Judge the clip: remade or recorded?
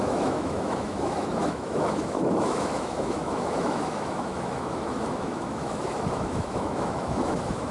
remade